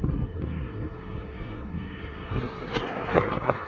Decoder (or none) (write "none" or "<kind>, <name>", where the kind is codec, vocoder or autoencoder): codec, SNAC